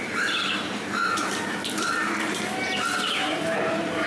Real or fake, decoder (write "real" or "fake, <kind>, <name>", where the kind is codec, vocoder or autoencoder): fake, vocoder, BigVGAN v2